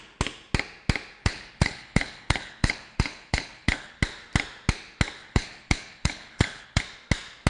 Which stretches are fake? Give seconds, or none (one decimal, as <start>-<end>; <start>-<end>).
1.2-4.0; 5.2-6.8